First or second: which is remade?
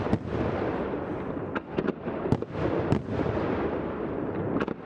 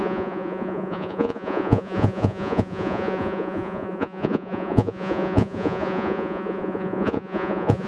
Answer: second